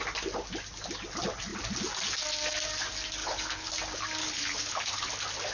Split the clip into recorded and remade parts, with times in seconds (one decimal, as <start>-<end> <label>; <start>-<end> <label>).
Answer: 0.0-3.2 recorded; 3.2-3.7 remade; 3.7-4.2 recorded; 4.2-5.1 remade; 5.1-5.5 recorded